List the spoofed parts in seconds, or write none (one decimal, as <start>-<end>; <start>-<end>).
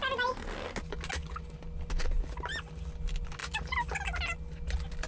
none